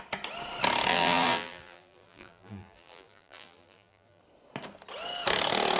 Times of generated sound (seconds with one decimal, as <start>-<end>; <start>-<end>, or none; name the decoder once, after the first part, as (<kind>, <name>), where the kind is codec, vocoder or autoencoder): 0.9-4.2 (vocoder, BigVGAN v2)